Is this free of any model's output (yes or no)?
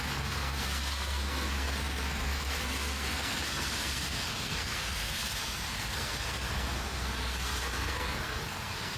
no